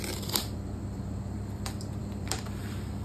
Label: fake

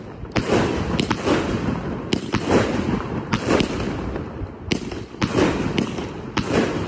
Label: real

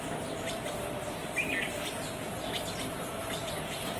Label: real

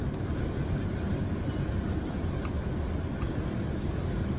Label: real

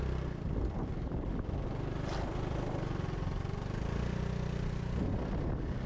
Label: real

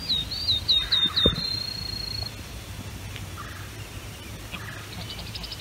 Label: real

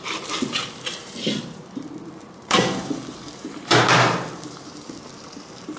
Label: fake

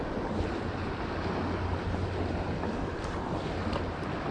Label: real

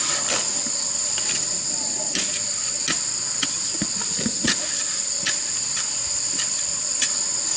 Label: fake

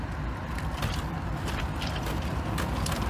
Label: fake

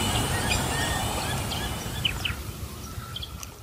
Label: real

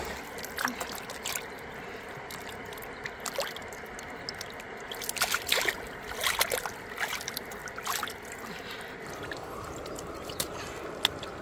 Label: real